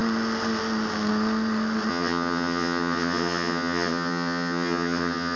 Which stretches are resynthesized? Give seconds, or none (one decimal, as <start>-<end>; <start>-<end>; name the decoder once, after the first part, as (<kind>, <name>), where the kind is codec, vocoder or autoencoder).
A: 1.9-5.4 (vocoder, HiFi-GAN)